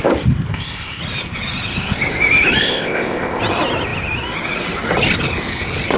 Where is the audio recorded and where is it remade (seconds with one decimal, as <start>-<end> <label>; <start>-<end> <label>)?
0.0-0.5 recorded; 0.5-1.0 remade; 1.0-2.6 recorded; 2.6-3.4 remade; 3.4-6.0 recorded